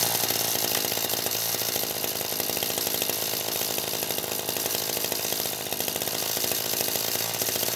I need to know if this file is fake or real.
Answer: real